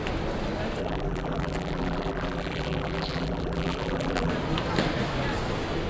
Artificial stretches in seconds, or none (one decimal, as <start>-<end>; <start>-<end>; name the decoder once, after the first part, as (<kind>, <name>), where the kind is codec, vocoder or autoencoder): 0.8-4.3 (vocoder, BigVGAN v2)